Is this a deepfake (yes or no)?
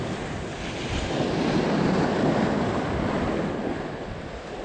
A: no